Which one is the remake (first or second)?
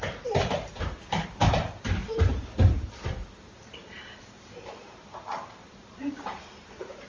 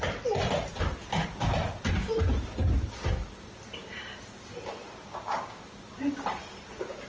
first